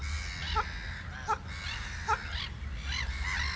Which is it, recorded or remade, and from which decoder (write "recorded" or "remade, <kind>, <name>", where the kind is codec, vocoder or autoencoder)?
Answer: recorded